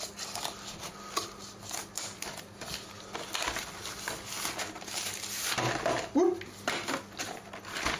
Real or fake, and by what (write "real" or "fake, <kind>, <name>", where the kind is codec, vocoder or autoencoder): real